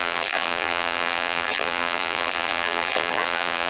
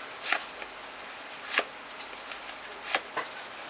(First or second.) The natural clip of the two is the second